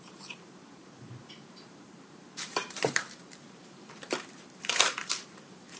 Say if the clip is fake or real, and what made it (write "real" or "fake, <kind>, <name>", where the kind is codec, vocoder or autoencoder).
fake, vocoder, BigVGAN v2